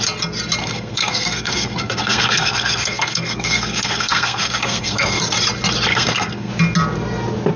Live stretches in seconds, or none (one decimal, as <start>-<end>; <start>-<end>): 0.0-0.6; 5.2-5.9; 6.5-7.6